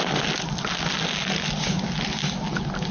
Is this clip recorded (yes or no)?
yes